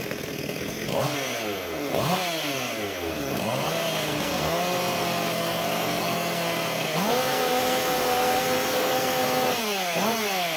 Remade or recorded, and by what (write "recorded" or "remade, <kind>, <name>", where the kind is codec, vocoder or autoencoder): remade, codec, SNAC